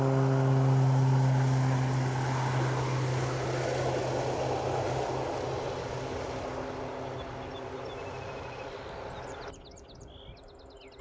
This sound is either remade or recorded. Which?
recorded